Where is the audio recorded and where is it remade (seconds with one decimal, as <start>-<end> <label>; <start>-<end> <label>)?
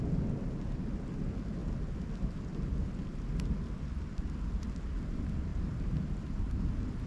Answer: 0.0-5.5 recorded; 5.5-6.6 remade; 6.6-7.1 recorded